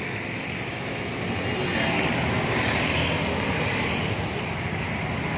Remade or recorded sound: recorded